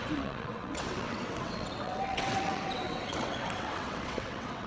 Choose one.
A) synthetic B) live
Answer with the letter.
A